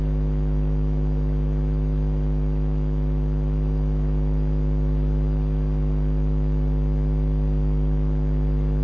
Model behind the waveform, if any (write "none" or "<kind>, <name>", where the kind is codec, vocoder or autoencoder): autoencoder, DAC-VAE